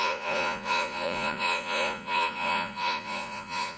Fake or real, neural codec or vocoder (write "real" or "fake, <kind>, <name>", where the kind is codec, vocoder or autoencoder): fake, vocoder, Vocos